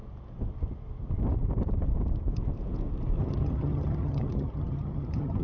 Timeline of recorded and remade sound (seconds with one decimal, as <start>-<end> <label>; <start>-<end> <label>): 0.0-3.2 recorded; 3.2-5.4 remade